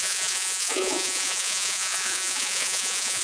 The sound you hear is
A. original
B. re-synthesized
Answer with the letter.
B